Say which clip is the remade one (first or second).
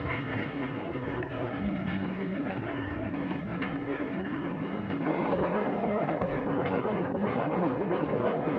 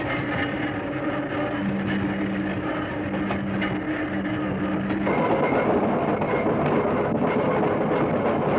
first